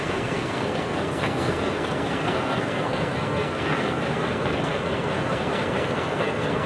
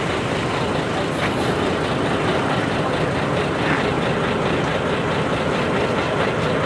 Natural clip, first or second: second